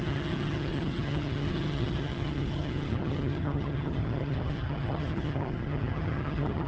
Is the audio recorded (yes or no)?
no